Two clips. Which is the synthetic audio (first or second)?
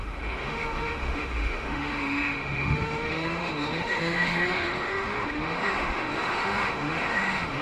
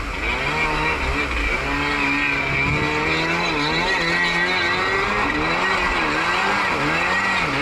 first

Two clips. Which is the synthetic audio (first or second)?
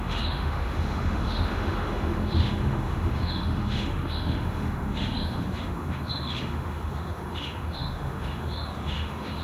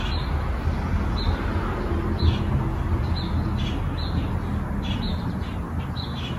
first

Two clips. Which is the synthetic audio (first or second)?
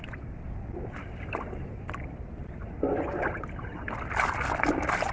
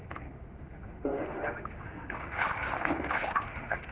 second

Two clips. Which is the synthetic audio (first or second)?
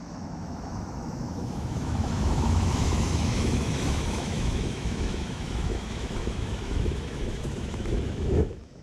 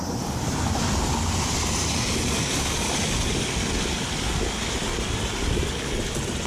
first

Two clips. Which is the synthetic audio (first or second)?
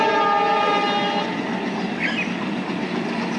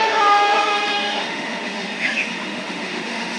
second